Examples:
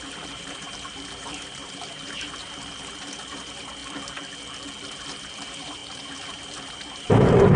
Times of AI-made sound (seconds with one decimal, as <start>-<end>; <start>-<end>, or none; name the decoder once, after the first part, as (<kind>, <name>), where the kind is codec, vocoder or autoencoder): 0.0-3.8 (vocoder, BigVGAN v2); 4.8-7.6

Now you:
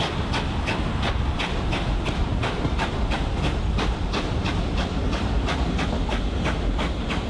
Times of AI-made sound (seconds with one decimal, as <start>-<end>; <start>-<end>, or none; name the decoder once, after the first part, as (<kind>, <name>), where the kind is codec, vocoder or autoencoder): 2.3-3.3 (vocoder, BigVGAN v2)

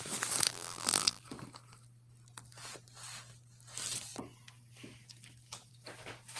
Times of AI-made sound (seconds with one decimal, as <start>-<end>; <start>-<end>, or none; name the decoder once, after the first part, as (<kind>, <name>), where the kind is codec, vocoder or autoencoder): 0.5-1.2 (vocoder, BigVGAN v2)

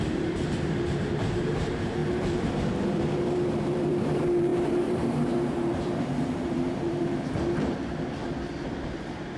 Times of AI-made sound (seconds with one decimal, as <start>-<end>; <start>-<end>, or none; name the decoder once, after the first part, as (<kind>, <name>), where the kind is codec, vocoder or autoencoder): 0.0-8.2 (vocoder, BigVGAN v2); 8.8-9.4